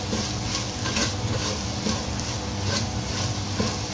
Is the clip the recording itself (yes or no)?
yes